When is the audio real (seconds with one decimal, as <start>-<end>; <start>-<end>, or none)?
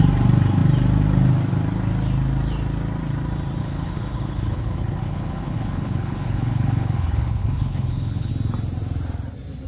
0.0-3.6; 8.3-9.7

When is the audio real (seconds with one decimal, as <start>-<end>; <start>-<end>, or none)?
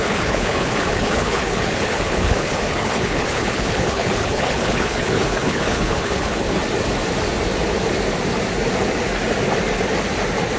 6.6-10.6